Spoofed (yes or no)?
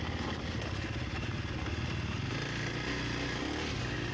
no